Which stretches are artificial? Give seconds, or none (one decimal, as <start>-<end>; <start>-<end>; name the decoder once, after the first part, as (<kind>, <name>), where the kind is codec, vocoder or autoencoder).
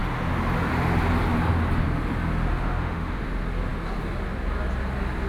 2.5-3.2 (autoencoder, DAC-VAE)